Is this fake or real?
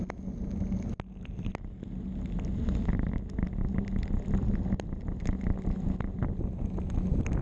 real